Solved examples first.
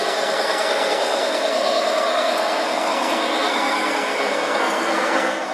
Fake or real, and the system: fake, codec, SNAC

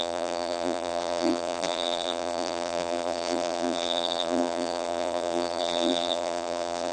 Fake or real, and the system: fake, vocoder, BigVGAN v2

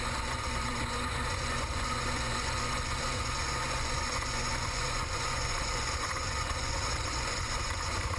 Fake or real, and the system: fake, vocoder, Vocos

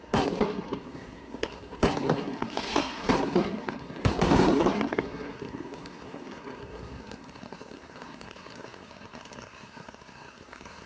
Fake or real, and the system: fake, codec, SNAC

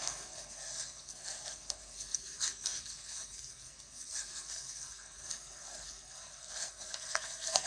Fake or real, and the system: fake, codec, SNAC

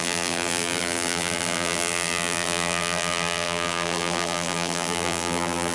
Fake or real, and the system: fake, vocoder, BigVGAN v2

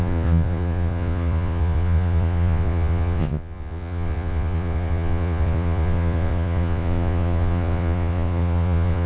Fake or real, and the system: fake, vocoder, Vocos